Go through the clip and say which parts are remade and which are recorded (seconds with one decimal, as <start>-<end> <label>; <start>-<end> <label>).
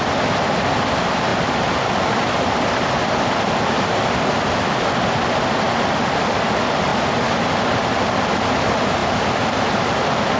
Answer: 0.0-10.4 recorded